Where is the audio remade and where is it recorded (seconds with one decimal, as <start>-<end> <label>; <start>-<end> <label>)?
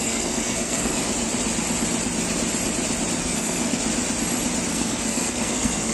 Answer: 0.0-1.1 remade; 1.1-3.2 recorded; 3.2-3.8 remade; 3.8-4.7 recorded; 4.7-5.9 remade